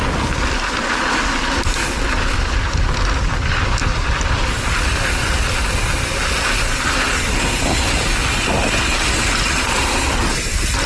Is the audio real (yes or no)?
yes